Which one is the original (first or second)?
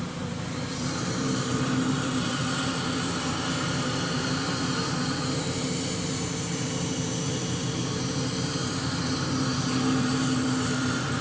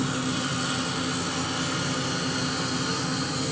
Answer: second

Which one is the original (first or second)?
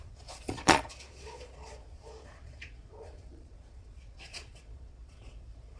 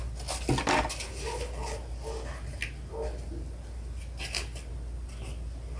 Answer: second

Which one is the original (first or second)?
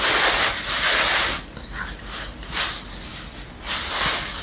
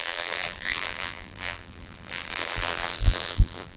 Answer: first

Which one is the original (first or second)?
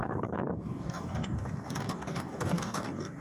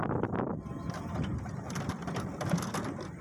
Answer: second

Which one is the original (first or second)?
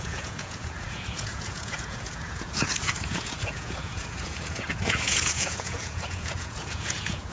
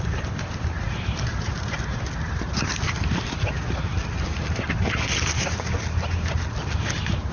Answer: second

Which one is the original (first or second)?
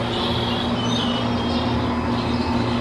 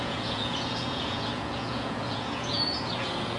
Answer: first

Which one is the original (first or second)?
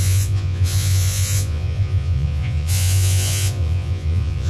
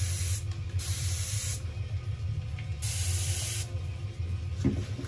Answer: second